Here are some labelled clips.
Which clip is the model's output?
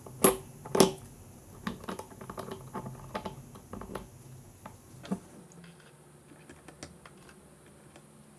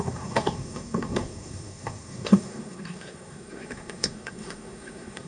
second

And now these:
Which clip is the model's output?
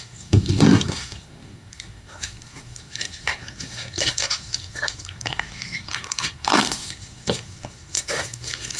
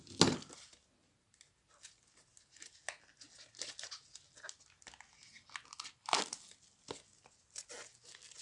first